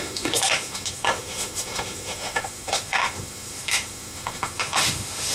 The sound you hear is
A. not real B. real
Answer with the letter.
A